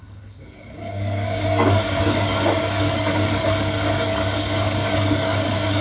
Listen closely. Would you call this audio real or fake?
fake